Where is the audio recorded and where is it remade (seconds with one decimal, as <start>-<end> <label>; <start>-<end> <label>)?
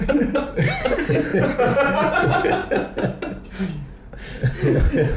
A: 0.0-5.2 recorded